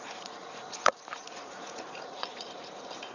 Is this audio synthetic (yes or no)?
yes